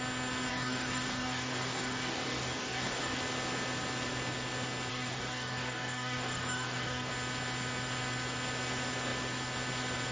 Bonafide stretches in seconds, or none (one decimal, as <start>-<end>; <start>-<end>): 0.0-0.5; 3.2-4.9; 7.1-10.1